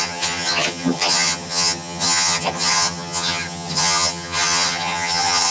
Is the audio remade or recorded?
remade